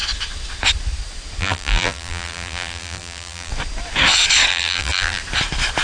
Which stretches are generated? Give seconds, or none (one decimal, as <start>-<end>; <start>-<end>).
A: 1.4-3.5; 4.5-5.2

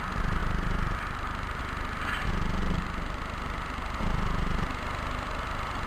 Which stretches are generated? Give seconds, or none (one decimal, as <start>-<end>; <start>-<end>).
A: 0.4-1.6; 2.6-3.2

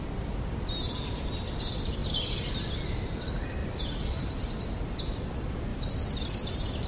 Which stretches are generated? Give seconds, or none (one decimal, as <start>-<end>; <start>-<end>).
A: 3.6-4.2; 5.7-6.9

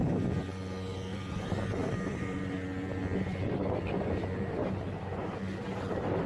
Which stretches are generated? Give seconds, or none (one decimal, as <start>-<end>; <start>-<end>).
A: 1.1-2.5; 4.6-5.4

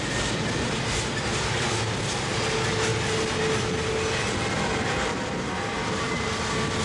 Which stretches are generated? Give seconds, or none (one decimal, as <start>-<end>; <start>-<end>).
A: none

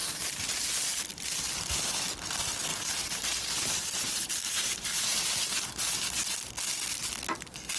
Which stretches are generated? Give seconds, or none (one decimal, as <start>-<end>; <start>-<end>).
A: 0.0-0.6; 2.7-6.5

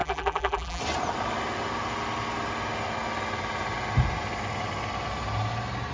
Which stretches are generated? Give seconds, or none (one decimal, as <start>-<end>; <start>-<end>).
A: 0.0-0.8

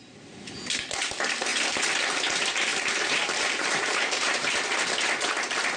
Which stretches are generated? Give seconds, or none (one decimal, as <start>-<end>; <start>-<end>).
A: 2.7-4.7